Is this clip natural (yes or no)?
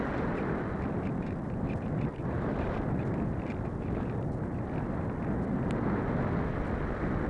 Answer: yes